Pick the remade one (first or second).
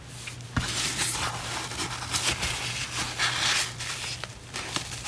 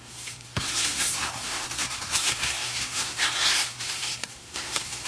second